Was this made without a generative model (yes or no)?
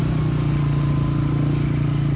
yes